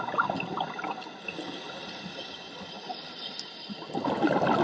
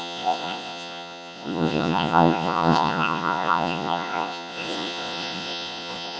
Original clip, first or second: first